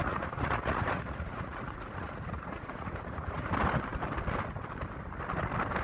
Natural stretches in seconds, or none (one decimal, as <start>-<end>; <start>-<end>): 3.5-5.8